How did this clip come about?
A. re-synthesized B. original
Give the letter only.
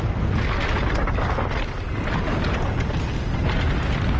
B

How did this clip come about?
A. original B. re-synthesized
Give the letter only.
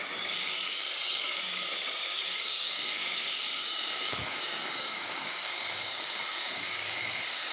B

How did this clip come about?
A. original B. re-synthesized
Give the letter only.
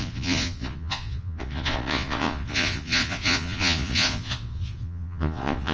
B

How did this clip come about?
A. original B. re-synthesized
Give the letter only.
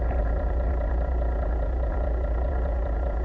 B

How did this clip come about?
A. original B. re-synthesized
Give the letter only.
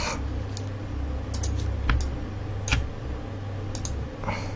A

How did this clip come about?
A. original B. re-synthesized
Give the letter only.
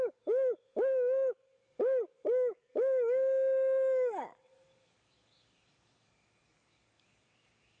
B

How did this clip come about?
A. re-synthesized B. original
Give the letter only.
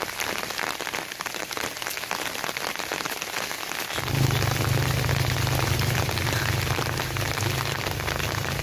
B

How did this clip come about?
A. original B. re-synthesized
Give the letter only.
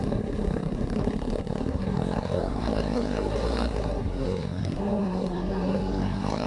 B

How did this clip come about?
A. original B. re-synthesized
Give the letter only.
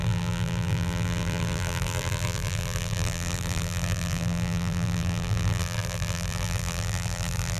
B